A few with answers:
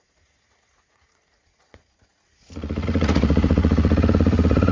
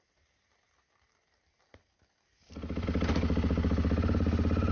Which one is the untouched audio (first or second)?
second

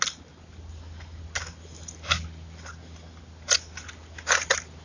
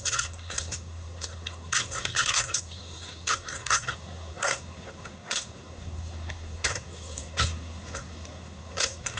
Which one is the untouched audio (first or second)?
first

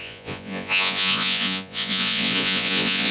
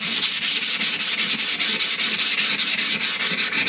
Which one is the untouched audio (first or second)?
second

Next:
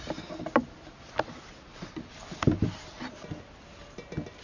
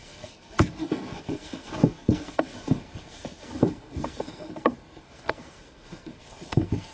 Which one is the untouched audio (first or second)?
first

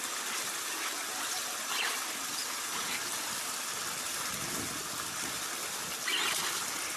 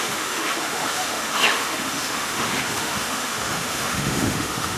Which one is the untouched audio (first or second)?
first